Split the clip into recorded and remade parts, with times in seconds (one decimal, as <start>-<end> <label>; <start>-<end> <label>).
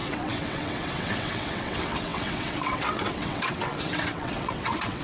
0.0-5.0 remade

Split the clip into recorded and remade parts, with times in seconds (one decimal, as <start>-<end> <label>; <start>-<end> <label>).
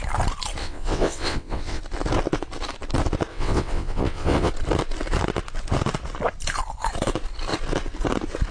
0.0-0.6 recorded; 0.6-1.8 remade; 1.8-3.3 recorded; 3.3-4.5 remade; 4.5-8.5 recorded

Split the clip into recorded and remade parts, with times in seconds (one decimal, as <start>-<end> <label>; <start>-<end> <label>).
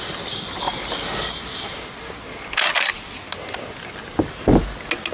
0.0-5.1 recorded